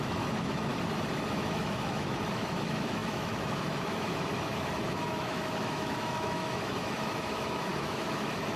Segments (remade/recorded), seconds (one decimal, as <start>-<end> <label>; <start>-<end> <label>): 0.0-0.7 remade; 0.7-1.3 recorded; 1.3-8.6 remade